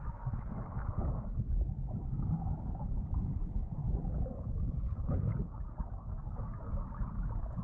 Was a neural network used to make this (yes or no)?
yes